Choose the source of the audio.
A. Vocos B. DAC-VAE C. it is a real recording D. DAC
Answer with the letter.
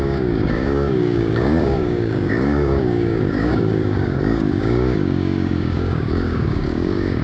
D